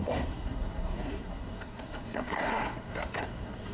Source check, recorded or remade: remade